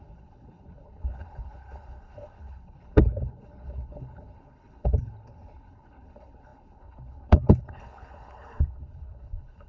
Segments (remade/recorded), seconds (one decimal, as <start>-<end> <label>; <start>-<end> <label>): 0.0-9.7 remade